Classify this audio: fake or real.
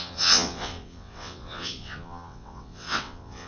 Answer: fake